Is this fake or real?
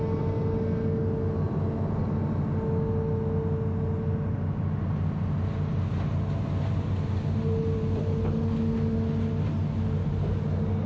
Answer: real